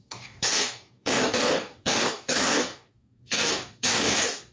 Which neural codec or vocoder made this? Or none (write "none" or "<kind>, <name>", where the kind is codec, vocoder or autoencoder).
codec, DAC